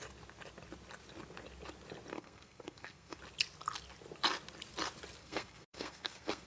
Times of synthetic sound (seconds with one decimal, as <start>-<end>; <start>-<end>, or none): 2.1-3.2; 5.2-6.5